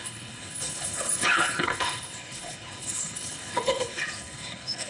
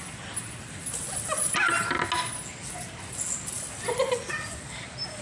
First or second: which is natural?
second